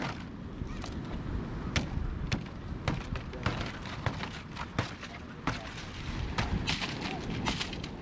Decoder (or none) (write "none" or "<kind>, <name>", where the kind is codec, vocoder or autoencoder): none